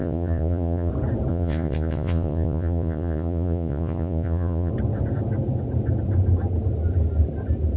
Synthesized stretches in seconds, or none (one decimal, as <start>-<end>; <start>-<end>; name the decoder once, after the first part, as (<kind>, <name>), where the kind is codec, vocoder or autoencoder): 0.0-0.9 (vocoder, Vocos); 1.3-4.7